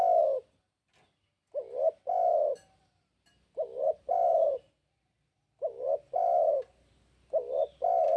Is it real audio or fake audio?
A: real